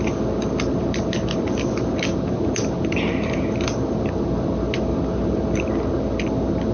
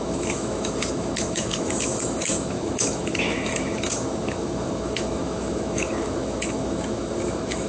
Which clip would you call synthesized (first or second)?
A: second